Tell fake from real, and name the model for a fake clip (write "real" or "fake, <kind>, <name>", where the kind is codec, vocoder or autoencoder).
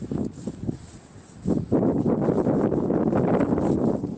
real